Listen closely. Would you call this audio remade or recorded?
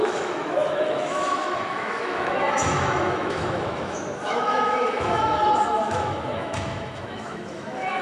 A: remade